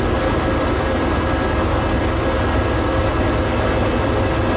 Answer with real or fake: real